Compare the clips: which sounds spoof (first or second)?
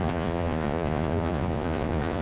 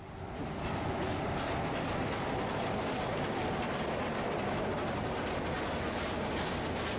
first